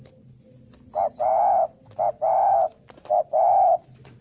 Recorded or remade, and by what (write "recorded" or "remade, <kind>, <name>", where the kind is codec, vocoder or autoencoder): recorded